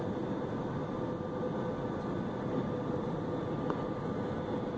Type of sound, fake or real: real